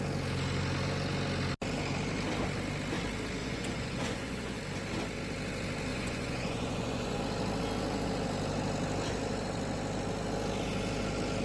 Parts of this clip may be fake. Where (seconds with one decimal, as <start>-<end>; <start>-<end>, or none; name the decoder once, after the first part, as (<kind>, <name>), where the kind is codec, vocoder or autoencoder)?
3.4-4.6 (vocoder, Vocos); 5.9-7.2